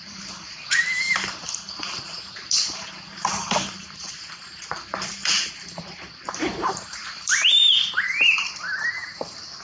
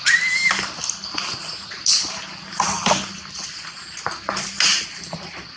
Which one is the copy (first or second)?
first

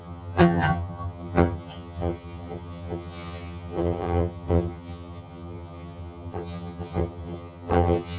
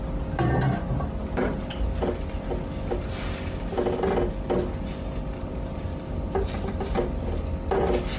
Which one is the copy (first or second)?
first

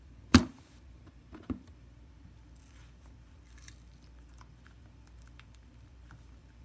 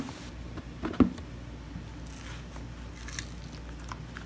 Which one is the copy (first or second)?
first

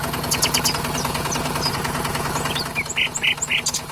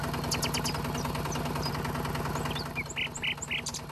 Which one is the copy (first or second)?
first